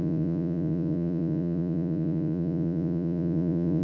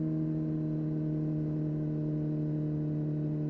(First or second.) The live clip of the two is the second